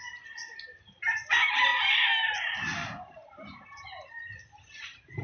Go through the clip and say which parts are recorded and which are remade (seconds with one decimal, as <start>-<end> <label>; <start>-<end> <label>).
0.0-5.2 recorded

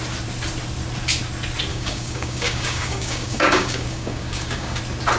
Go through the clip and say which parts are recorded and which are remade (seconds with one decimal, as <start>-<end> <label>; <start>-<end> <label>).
0.0-1.7 recorded; 1.7-4.8 remade; 4.8-5.2 recorded